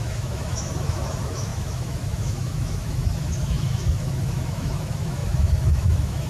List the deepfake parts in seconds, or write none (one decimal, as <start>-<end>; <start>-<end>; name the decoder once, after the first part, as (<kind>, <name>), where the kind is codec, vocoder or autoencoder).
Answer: 0.0-6.3 (autoencoder, DAC-VAE)